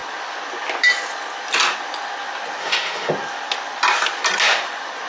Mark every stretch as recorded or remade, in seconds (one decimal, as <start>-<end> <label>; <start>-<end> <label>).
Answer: 0.0-2.6 recorded; 2.6-3.1 remade; 3.1-5.1 recorded